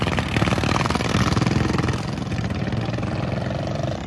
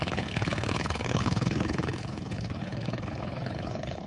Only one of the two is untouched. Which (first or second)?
first